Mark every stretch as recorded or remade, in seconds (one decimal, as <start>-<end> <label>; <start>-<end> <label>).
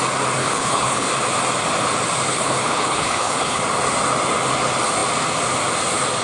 0.0-0.4 recorded; 0.4-1.1 remade; 1.1-2.3 recorded; 2.3-3.6 remade; 3.6-6.2 recorded